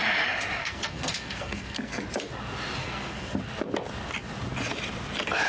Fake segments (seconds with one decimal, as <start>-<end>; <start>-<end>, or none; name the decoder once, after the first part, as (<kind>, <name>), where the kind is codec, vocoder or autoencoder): 0.6-2.0 (codec, SNAC); 2.8-3.4